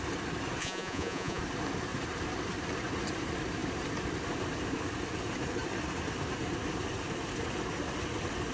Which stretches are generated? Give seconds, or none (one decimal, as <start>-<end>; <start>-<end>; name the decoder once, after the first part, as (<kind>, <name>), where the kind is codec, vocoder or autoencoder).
0.6-1.4 (vocoder, Vocos)